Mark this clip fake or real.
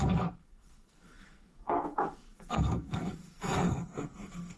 fake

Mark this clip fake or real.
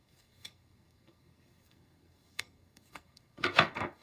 fake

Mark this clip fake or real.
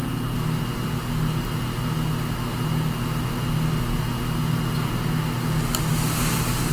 real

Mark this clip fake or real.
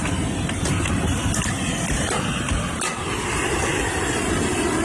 real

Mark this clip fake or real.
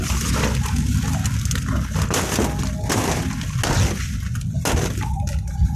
real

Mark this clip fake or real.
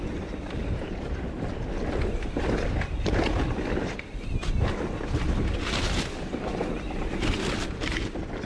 real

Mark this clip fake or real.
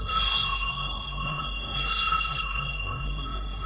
fake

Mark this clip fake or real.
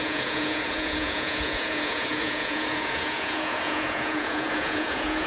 fake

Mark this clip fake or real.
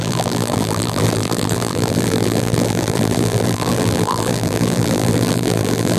fake